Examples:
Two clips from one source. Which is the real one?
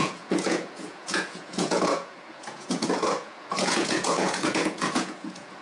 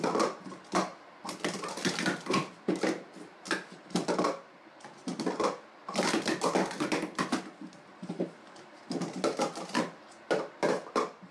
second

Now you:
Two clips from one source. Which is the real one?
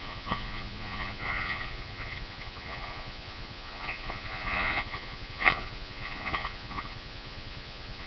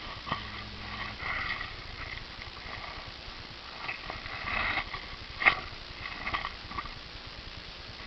second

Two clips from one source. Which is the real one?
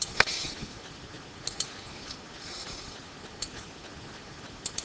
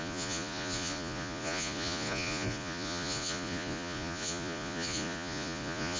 first